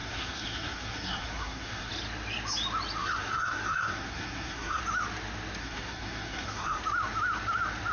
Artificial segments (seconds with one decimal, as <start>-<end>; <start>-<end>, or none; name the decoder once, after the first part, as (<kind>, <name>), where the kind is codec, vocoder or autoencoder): 0.0-1.9 (codec, SNAC); 3.0-4.8; 5.6-6.8